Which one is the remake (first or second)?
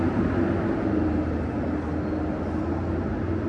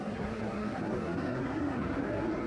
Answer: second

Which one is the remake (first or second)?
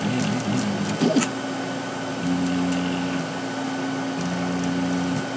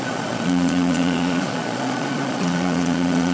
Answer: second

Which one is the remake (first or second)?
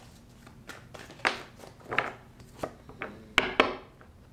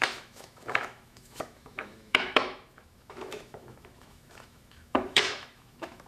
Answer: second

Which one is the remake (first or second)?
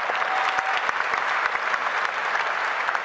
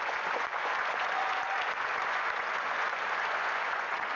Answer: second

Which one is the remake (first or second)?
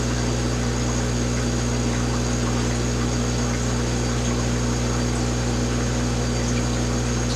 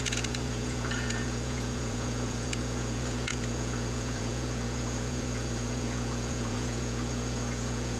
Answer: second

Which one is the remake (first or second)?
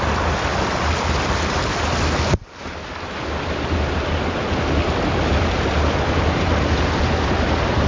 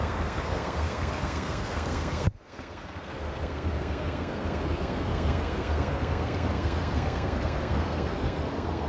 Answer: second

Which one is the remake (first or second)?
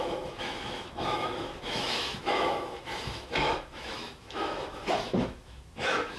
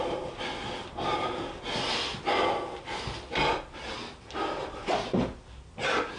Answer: first